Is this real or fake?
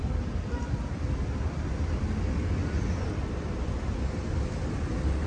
real